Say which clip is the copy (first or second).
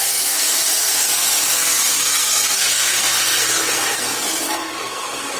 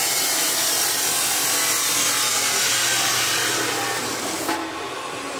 first